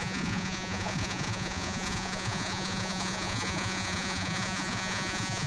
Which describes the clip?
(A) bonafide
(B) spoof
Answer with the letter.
B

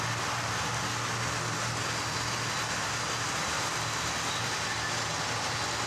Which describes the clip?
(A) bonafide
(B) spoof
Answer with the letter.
A